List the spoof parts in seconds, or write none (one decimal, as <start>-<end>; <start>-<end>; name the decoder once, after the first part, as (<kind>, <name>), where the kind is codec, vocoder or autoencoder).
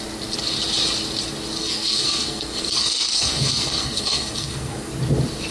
1.6-4.9 (codec, SNAC)